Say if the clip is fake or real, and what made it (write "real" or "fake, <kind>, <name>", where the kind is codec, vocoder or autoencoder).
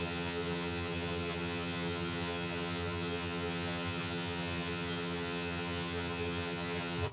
fake, vocoder, HiFi-GAN